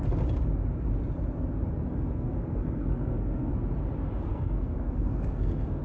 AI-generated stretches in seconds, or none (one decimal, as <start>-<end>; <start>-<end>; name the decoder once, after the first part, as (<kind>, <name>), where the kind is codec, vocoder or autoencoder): 1.9-3.5 (codec, SNAC); 4.3-5.8